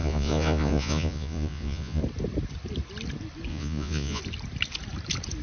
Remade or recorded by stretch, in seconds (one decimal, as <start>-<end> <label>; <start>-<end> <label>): 0.0-2.0 remade; 2.0-3.5 recorded; 3.5-4.2 remade; 4.2-5.4 recorded